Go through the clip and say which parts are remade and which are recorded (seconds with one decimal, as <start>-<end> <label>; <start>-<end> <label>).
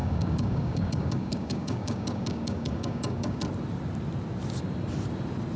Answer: 0.0-3.4 remade; 3.4-5.6 recorded